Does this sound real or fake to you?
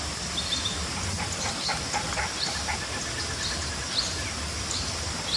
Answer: real